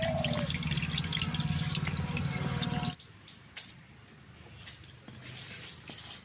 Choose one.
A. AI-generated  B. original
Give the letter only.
B